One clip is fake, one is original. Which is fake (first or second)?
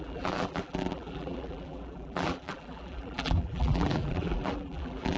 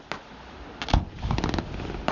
first